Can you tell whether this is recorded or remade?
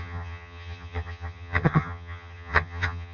remade